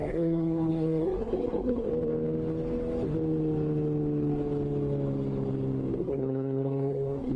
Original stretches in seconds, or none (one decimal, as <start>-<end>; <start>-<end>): 1.9-6.0